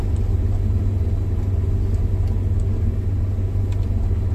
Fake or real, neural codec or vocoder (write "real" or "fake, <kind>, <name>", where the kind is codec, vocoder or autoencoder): real